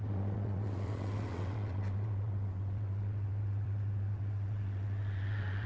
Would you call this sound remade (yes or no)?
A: yes